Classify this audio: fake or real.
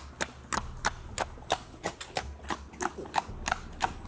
real